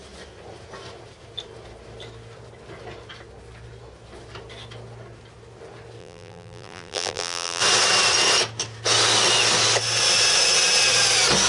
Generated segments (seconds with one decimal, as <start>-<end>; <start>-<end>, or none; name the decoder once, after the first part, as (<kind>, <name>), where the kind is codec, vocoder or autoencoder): 6.0-7.6 (vocoder, BigVGAN v2)